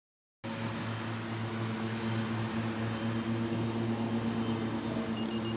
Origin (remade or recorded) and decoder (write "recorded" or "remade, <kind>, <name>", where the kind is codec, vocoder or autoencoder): recorded